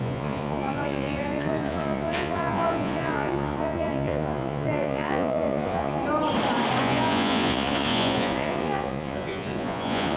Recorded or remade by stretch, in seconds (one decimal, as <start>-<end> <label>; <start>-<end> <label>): 0.0-6.0 remade; 6.0-6.8 recorded; 6.8-10.2 remade

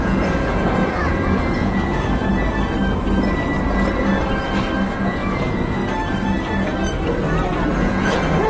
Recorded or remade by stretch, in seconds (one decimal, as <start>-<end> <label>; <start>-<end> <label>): 0.0-2.3 remade; 2.3-4.9 recorded; 4.9-5.8 remade; 5.8-7.8 recorded; 7.8-8.5 remade

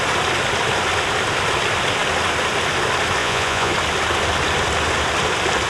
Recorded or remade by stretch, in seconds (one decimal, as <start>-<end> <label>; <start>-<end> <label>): 0.0-3.2 recorded; 3.2-3.7 remade; 3.7-5.7 recorded